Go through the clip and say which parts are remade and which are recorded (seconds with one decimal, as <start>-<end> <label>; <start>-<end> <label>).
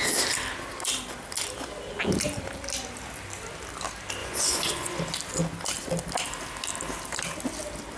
0.0-4.2 recorded; 4.2-5.0 remade; 5.0-8.0 recorded